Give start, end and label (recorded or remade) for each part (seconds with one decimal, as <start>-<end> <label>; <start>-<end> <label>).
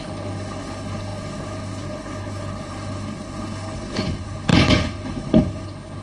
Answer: 0.0-6.0 remade